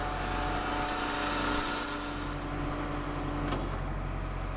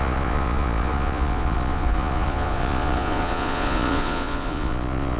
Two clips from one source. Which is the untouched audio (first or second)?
first